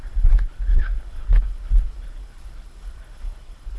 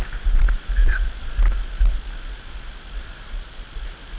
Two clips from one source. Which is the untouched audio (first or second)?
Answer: second